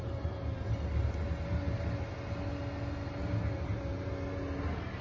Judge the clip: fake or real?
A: real